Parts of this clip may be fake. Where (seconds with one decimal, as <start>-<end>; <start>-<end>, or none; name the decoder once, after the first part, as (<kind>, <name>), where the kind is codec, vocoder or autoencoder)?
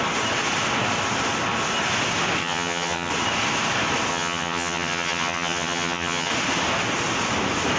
2.4-3.1 (vocoder, HiFi-GAN); 4.1-6.3